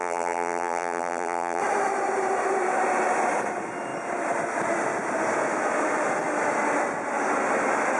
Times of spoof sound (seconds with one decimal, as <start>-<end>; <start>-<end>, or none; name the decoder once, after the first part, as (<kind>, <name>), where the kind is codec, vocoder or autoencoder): 0.0-1.6 (vocoder, BigVGAN v2)